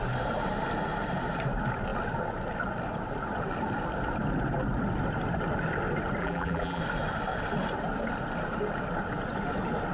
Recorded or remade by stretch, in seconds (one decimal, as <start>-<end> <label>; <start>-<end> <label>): 0.0-6.2 recorded; 6.2-6.8 remade; 6.8-9.9 recorded